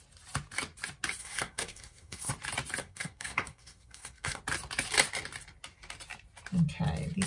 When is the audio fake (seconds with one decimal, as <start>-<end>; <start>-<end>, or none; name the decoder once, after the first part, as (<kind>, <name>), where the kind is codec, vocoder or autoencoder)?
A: 1.2-2.3 (codec, SNAC); 2.8-4.4